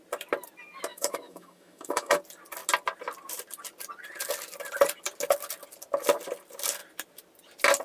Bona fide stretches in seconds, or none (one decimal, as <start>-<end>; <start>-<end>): 0.0-0.9; 2.2-7.8